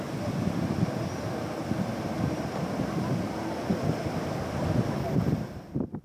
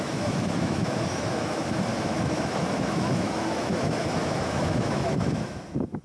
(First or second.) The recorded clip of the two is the first